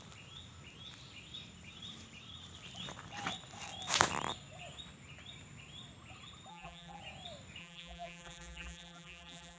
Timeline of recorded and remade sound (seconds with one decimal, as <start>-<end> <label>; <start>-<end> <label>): 0.0-6.5 recorded; 6.5-7.0 remade; 7.0-7.6 recorded; 7.6-9.6 remade